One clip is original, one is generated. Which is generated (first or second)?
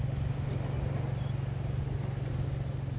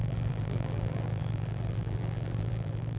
second